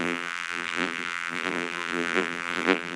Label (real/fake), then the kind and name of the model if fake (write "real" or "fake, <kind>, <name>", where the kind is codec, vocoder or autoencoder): fake, vocoder, BigVGAN v2